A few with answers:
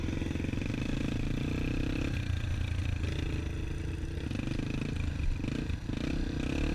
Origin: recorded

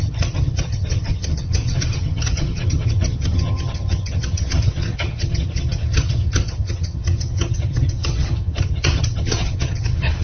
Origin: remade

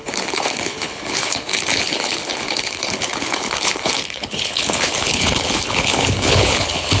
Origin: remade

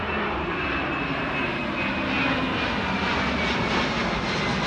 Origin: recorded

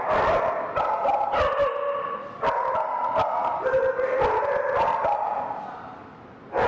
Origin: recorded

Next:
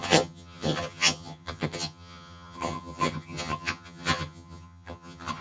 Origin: remade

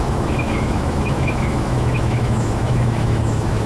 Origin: remade